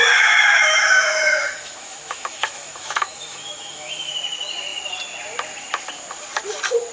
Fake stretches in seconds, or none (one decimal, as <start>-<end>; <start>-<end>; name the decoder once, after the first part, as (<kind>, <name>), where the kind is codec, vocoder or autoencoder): 0.0-4.1 (autoencoder, DAC-VAE)